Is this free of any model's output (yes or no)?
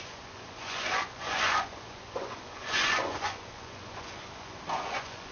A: no